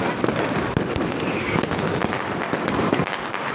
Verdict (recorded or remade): recorded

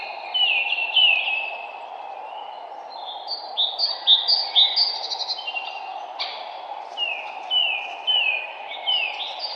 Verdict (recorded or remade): recorded